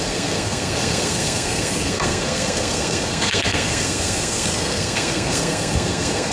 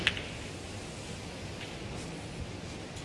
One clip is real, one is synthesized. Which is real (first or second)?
second